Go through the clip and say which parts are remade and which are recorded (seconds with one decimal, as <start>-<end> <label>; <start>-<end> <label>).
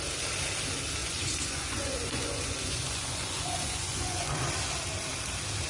0.0-1.0 recorded; 1.0-4.4 remade; 4.4-5.7 recorded